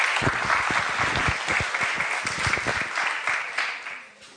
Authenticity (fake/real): real